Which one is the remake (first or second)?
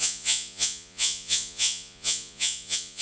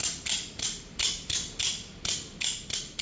first